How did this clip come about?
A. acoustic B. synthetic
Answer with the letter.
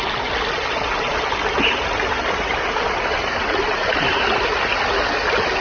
A